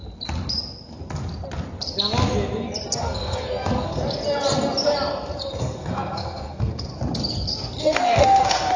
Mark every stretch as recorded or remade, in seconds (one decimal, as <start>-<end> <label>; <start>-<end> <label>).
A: 0.0-3.0 recorded; 3.0-4.0 remade; 4.0-5.6 recorded; 5.6-6.9 remade; 6.9-7.8 recorded; 7.8-8.8 remade